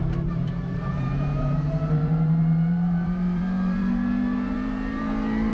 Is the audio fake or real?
fake